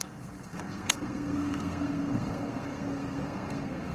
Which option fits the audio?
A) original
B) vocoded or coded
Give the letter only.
B